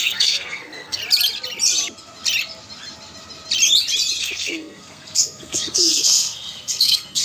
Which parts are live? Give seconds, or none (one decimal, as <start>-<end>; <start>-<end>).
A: 1.0-4.2